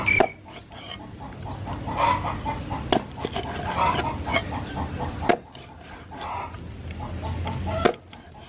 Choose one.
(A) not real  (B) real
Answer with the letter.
B